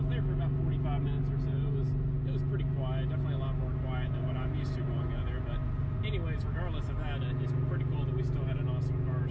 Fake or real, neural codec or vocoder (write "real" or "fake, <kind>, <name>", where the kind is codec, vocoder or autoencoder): real